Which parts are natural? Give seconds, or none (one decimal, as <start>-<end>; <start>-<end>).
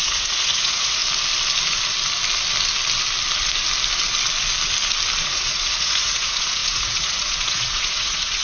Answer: 1.0-5.2